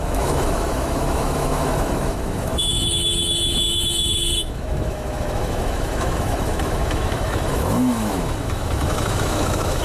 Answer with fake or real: fake